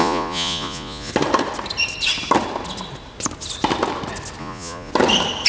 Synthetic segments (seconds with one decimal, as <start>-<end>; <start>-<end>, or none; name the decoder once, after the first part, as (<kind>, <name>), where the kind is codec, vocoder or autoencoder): 0.0-1.1 (vocoder, Vocos); 4.4-4.9

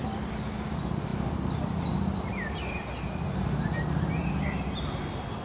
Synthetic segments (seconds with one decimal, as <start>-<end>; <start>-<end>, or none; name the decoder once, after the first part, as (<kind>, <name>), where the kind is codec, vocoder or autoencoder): none

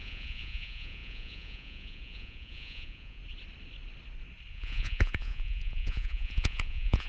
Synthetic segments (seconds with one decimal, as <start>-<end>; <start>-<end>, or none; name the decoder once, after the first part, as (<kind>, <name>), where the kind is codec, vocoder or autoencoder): 0.0-3.2 (vocoder, Vocos); 4.5-7.1